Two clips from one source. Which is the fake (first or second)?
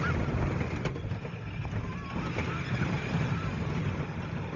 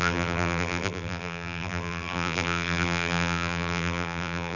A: second